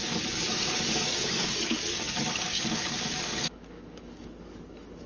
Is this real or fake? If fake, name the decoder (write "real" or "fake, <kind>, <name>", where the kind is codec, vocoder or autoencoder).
fake, codec, DAC